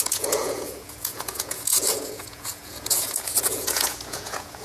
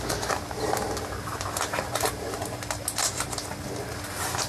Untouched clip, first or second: second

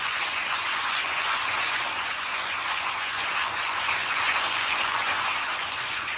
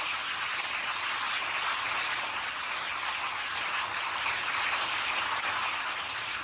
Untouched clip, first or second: second